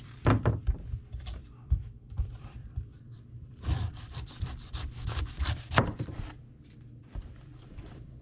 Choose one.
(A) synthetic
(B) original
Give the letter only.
A